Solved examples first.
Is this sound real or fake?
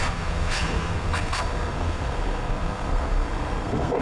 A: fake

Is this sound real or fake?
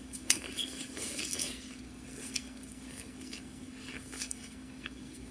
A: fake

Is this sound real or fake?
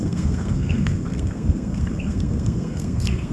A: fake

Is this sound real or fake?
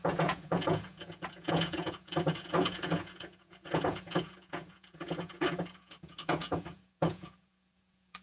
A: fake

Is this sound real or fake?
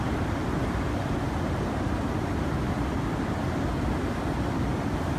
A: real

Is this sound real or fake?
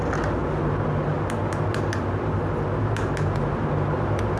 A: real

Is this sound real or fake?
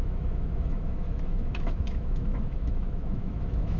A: fake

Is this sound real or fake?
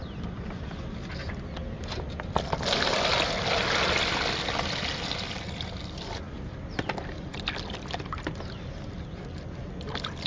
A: real